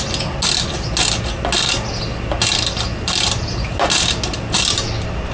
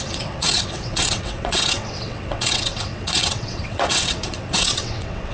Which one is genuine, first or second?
first